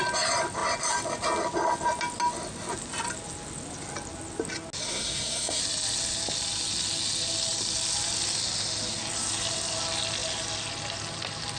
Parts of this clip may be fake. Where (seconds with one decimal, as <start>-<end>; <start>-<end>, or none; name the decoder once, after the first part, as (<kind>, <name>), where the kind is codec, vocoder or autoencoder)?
4.8-5.6 (codec, SNAC)